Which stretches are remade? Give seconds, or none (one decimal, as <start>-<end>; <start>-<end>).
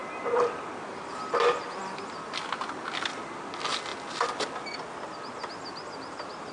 none